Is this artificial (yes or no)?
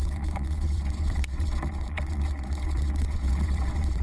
yes